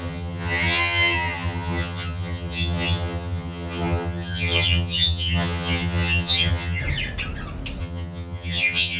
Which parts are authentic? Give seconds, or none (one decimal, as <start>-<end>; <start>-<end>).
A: 6.8-7.8